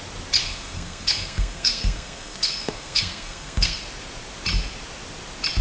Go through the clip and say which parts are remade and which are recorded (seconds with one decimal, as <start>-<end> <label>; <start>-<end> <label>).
0.0-0.4 recorded; 0.4-3.8 remade; 3.8-5.6 recorded